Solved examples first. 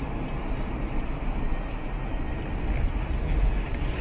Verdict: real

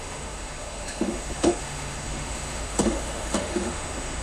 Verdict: fake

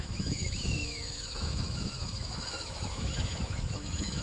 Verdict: fake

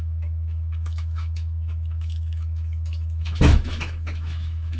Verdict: fake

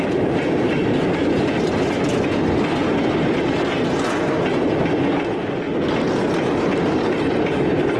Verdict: real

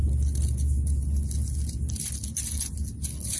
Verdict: real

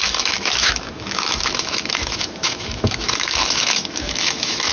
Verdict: fake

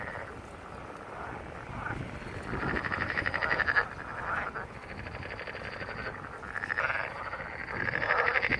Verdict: real